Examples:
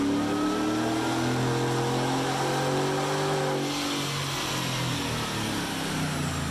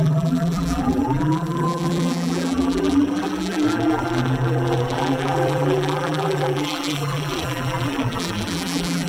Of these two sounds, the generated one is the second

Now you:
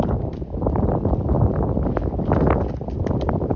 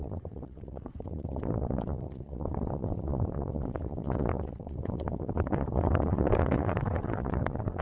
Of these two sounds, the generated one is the second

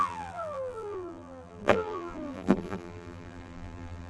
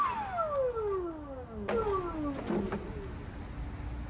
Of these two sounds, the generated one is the first